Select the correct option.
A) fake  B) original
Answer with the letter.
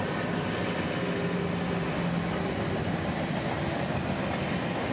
B